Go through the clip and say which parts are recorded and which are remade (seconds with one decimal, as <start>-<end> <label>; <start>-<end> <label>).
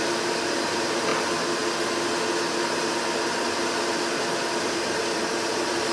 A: 0.0-1.1 remade; 1.1-4.6 recorded; 4.6-5.9 remade